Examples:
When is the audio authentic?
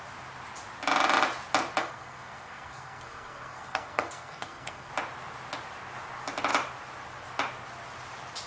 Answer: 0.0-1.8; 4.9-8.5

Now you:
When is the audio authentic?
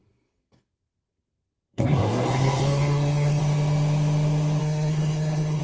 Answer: 3.4-4.6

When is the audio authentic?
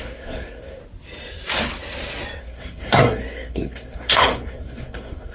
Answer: 0.8-2.4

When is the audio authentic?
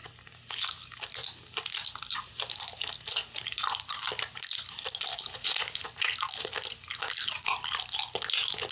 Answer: 0.0-8.7